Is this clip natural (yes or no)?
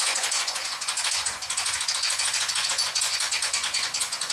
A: no